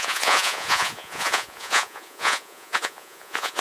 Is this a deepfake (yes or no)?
yes